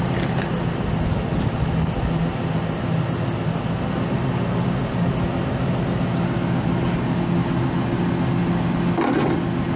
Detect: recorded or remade recorded